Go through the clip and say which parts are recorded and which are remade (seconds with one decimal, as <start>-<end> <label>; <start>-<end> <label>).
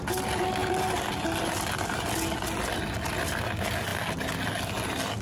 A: 0.0-5.2 recorded